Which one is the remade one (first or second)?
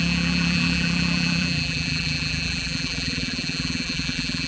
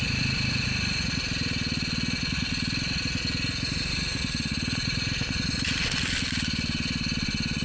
first